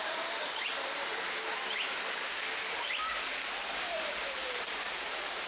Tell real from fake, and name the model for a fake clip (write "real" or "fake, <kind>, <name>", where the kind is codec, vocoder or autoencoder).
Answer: fake, vocoder, BigVGAN v2